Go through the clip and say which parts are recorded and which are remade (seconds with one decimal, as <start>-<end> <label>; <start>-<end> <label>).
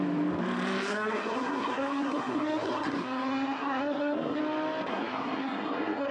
0.0-0.9 recorded; 0.9-4.4 remade; 4.4-4.9 recorded; 4.9-6.1 remade